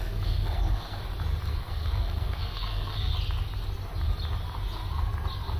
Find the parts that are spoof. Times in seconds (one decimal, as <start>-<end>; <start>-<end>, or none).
0.0-1.0; 1.5-3.1